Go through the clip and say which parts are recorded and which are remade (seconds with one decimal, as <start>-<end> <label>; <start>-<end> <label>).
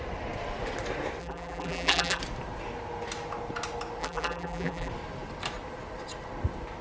0.0-1.2 recorded; 1.2-2.2 remade; 2.2-4.0 recorded; 4.0-4.9 remade; 4.9-6.8 recorded